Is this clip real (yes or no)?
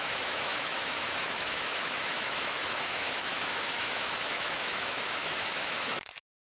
no